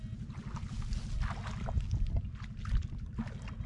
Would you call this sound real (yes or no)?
yes